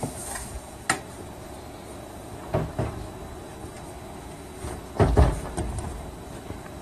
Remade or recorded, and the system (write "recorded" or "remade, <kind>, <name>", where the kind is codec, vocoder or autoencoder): recorded